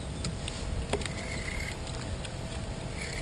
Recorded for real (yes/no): yes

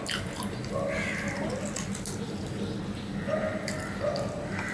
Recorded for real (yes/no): yes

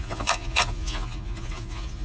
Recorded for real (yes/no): no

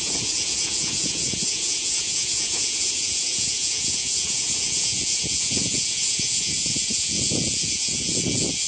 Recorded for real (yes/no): no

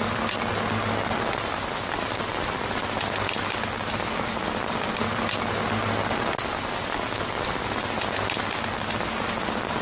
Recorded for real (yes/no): yes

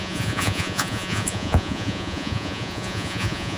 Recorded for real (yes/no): no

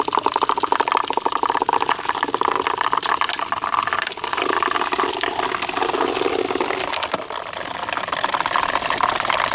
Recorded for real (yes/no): yes